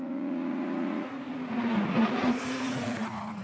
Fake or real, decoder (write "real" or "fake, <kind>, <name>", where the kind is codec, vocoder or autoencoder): fake, vocoder, Vocos